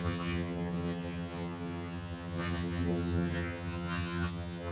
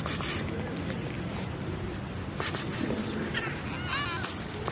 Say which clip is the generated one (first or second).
first